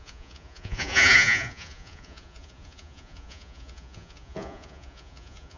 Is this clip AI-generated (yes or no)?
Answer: yes